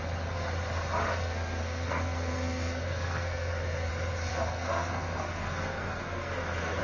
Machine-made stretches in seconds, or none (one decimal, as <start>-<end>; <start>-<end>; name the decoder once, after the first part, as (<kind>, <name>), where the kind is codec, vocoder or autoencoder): 1.1-3.9 (codec, SNAC); 4.3-6.8